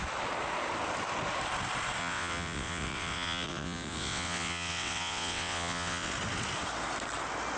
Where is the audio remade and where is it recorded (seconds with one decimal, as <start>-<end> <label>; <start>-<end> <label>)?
0.0-2.0 recorded; 2.0-6.1 remade; 6.1-7.6 recorded